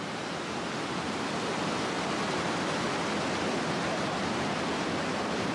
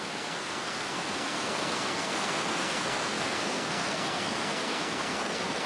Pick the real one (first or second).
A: first